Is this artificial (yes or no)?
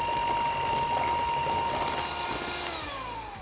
no